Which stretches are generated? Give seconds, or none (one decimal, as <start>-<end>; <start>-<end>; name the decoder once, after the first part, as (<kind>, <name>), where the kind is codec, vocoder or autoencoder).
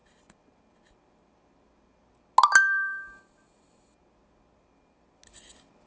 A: none